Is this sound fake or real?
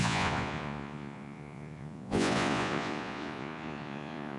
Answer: fake